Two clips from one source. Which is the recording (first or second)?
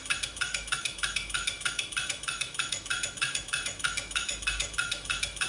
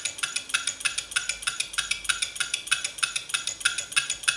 second